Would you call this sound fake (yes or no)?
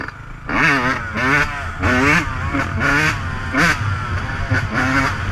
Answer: no